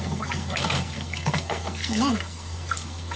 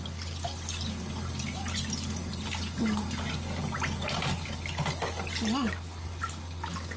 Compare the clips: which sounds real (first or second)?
second